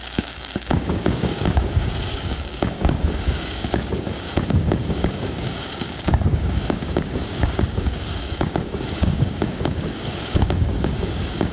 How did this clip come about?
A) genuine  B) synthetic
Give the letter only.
B